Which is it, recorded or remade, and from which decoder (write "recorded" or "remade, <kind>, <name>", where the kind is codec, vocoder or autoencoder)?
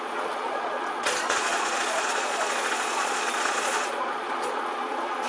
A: remade, vocoder, Vocos